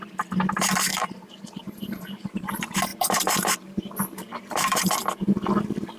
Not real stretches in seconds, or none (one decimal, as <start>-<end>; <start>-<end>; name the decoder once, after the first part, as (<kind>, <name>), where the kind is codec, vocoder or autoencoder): 0.9-2.5 (vocoder, BigVGAN v2); 2.9-4.9